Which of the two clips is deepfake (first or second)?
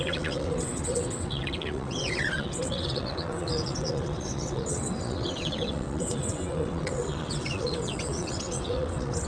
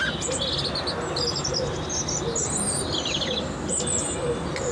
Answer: first